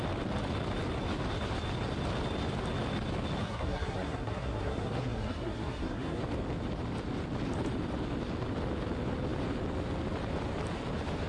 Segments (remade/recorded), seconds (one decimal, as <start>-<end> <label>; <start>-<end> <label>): 0.0-3.4 recorded; 3.4-6.2 remade; 6.2-11.3 recorded